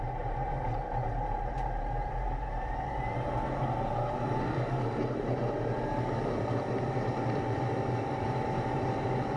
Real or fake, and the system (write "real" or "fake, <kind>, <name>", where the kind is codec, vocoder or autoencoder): fake, vocoder, BigVGAN v2